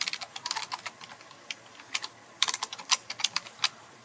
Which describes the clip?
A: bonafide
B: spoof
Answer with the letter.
B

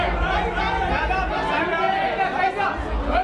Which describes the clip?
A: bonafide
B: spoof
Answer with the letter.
A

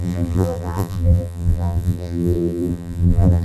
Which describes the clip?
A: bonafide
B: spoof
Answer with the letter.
B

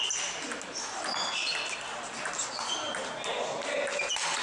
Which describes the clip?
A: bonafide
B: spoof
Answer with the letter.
A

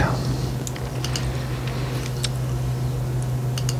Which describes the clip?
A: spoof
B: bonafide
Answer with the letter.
B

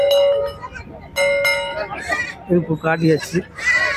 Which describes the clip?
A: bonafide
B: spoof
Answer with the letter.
A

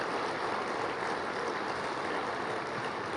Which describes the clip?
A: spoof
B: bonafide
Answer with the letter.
B